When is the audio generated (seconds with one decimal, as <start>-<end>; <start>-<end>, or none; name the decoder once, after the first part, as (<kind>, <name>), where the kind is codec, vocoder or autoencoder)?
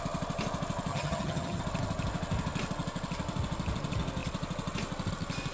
0.9-1.6 (vocoder, HiFi-GAN)